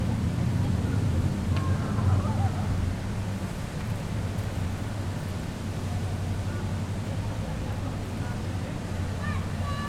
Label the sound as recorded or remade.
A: recorded